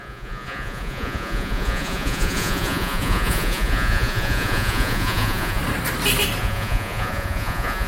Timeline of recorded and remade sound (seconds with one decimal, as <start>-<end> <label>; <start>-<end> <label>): 0.0-5.6 remade; 5.6-6.4 recorded; 6.4-7.9 remade